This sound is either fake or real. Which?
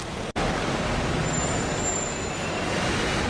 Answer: real